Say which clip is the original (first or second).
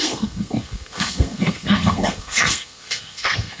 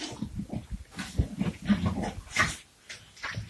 second